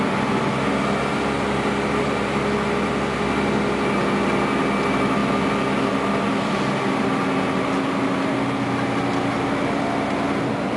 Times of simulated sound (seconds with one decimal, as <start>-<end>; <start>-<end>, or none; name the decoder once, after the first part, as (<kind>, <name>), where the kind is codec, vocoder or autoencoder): none